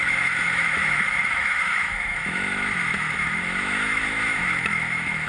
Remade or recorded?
remade